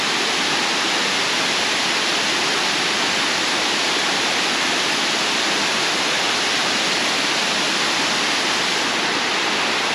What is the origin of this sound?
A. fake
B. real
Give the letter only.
B